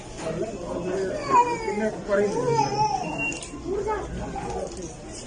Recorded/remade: recorded